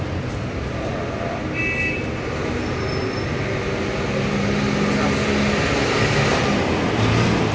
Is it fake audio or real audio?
real